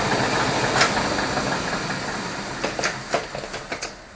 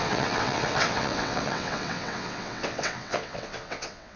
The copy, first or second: second